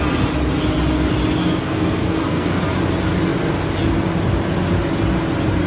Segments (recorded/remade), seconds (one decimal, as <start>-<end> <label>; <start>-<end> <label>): 0.0-1.6 recorded; 1.6-2.6 remade; 2.6-5.7 recorded